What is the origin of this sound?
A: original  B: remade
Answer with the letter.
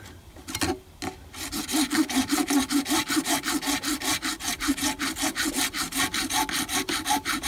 A